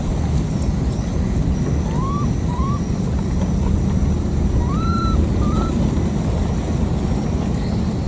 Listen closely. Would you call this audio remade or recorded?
recorded